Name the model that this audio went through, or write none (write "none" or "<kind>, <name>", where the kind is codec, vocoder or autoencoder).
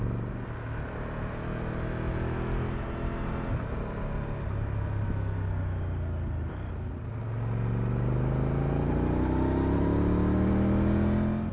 none